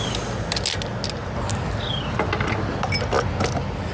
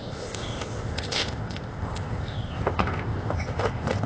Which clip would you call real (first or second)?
first